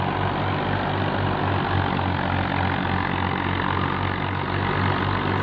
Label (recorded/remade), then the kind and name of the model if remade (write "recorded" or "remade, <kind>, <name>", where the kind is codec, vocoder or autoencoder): recorded